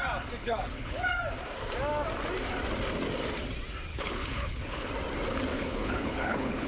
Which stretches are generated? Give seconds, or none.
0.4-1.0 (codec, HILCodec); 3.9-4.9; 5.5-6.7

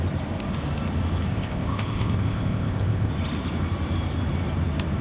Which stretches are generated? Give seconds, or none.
1.3-3.1 (codec, ZipCodec)

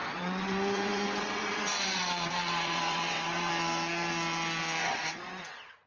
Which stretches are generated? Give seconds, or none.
0.0-3.5 (vocoder, WaveNeXt); 4.8-5.9

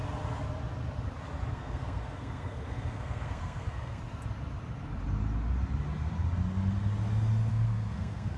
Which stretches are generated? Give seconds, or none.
1.5-4.0 (codec, SNAC); 7.5-8.4

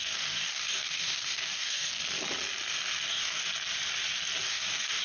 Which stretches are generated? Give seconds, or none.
0.0-2.0 (codec, DAC); 3.0-3.4; 4.4-5.0